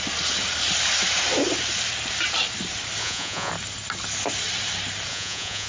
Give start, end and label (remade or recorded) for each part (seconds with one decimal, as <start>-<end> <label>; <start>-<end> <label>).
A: 0.0-3.0 recorded; 3.0-3.5 remade; 3.5-5.1 recorded; 5.1-5.7 remade